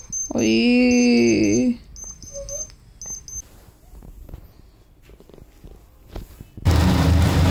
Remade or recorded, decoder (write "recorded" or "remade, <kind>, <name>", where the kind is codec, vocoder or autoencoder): recorded